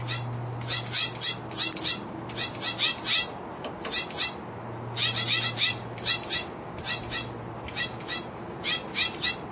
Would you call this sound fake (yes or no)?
no